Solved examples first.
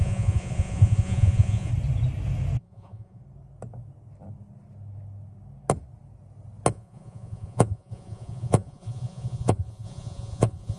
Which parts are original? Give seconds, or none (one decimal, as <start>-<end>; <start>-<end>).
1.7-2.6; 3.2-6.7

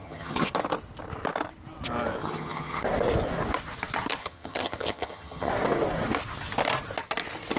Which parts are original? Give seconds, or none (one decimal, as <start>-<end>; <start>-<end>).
0.5-2.2; 2.8-4.2; 5.5-7.6

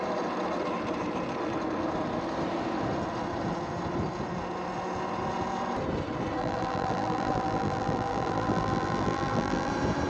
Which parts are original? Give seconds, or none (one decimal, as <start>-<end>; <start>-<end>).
0.0-6.4; 9.7-10.1

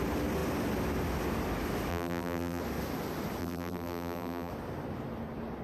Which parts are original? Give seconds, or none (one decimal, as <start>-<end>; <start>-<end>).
0.0-1.9; 2.6-3.4; 4.5-5.6

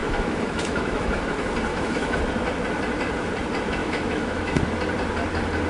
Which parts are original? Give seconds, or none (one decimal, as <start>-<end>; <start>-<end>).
1.2-1.7; 2.2-3.8; 4.6-5.7

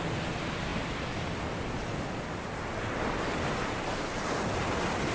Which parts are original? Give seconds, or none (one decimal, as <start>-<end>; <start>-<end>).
0.0-5.1

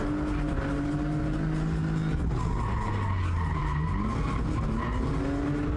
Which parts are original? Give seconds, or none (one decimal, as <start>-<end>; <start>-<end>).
0.0-5.8